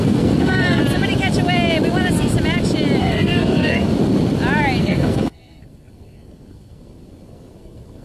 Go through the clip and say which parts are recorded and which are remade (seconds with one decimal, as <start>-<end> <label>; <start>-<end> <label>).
0.0-0.8 remade; 0.8-3.0 recorded; 3.0-3.9 remade; 3.9-4.8 recorded; 4.8-8.0 remade